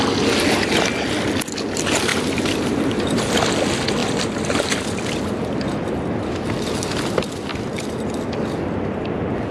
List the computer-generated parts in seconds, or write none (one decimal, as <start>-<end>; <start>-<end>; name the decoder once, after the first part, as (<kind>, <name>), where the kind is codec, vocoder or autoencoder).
2.1-3.2 (vocoder, BigVGAN v2)